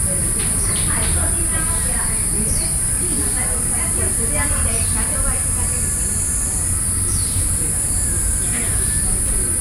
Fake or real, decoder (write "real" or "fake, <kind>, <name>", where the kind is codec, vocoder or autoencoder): real